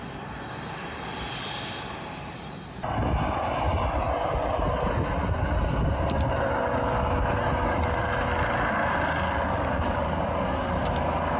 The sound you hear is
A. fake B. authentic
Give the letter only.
B